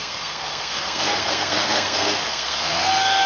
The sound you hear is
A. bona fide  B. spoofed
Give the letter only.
B